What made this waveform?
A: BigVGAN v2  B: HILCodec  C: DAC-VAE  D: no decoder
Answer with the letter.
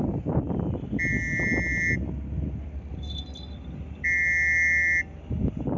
D